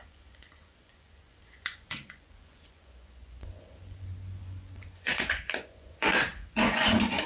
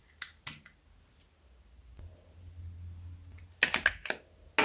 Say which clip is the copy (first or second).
first